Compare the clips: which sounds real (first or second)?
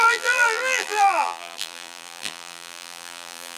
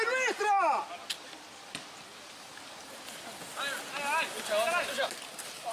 second